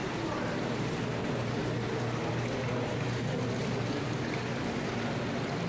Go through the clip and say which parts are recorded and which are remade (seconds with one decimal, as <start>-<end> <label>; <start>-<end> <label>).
0.0-5.7 recorded